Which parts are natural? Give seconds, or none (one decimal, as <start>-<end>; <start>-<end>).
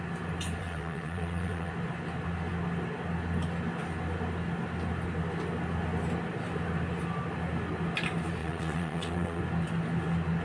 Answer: 0.0-0.6; 1.7-8.4; 9.4-10.4